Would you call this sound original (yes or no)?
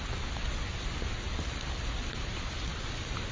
yes